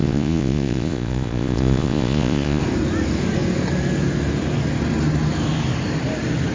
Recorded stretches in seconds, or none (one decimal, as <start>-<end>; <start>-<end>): 2.6-6.5